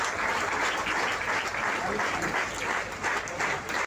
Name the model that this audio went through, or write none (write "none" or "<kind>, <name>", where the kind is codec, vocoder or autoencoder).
none